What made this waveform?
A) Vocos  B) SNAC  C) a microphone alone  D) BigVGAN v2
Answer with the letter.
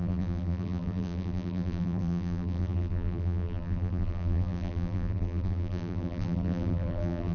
D